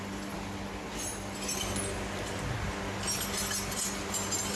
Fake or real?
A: real